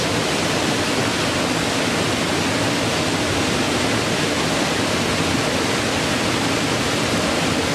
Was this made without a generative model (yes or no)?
yes